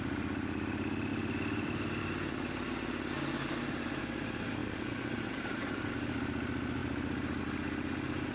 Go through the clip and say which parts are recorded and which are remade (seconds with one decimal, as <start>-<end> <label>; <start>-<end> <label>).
0.0-1.1 recorded; 1.1-2.0 remade; 2.0-4.6 recorded; 4.6-5.9 remade; 5.9-6.8 recorded; 6.8-7.4 remade; 7.4-8.3 recorded

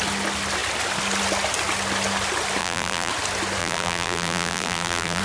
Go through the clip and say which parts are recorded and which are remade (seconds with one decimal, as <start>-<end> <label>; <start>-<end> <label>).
0.0-2.6 recorded; 2.6-3.1 remade; 3.1-3.6 recorded; 3.6-5.2 remade